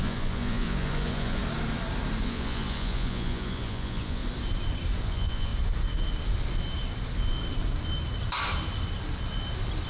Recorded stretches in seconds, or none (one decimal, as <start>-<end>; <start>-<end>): 1.4-2.2; 4.2-5.0; 5.5-9.9